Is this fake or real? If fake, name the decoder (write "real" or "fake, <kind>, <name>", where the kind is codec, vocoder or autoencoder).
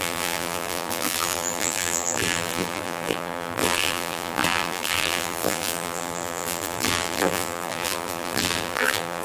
fake, vocoder, BigVGAN v2